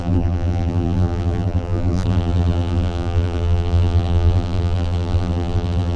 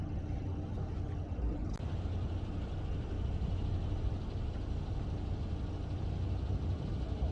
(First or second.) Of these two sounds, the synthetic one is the first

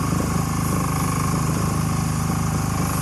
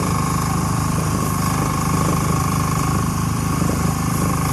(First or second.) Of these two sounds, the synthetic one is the second